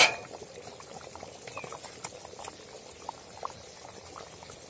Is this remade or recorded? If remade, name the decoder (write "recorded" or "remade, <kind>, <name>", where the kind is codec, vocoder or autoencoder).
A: recorded